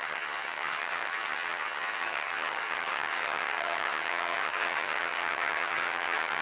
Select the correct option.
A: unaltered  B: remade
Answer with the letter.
B